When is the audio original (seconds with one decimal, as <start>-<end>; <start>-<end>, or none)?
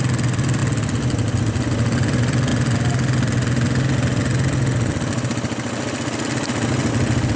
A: 0.0-7.4